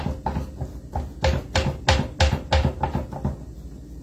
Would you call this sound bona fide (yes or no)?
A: yes